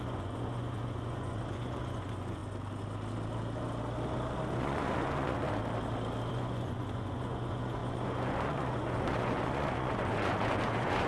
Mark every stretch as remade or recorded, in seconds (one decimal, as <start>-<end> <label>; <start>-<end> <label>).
0.0-2.4 remade; 2.4-4.6 recorded; 4.6-5.6 remade; 5.6-6.3 recorded; 6.3-11.1 remade